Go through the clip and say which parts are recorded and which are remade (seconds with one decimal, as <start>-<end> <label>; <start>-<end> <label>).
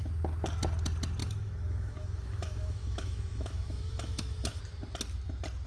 0.0-1.2 recorded; 1.2-4.6 remade; 4.6-5.7 recorded